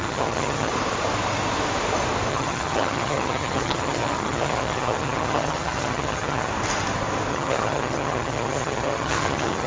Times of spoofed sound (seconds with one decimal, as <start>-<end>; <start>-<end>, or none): 0.0-0.7; 2.3-6.5; 7.3-9.7